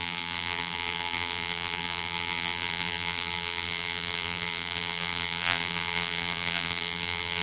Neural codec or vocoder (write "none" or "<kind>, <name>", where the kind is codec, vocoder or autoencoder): vocoder, BigVGAN v2